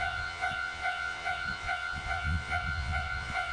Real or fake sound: fake